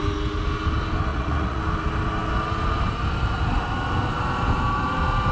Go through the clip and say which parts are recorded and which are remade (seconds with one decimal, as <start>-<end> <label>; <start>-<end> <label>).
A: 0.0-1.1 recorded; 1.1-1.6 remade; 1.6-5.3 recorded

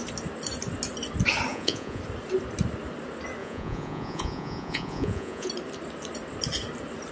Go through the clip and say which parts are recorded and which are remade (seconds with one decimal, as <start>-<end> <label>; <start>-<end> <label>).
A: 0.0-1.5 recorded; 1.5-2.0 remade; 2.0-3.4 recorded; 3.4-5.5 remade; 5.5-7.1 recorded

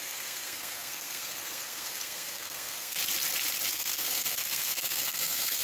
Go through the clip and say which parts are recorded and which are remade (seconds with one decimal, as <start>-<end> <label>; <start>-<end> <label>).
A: 0.0-3.0 remade; 3.0-3.7 recorded; 3.7-5.6 remade

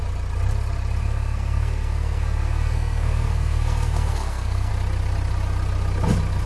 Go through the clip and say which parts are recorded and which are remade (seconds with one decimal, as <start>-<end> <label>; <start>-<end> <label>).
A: 0.0-1.0 recorded; 1.0-4.7 remade; 4.7-6.5 recorded